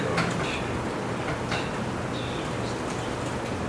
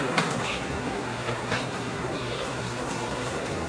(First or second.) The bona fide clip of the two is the first